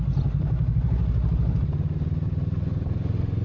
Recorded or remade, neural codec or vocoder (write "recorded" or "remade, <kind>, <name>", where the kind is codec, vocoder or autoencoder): recorded